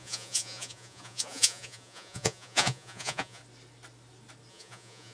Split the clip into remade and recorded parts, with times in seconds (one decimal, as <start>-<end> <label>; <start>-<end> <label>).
0.0-3.4 remade; 3.4-4.5 recorded; 4.5-5.1 remade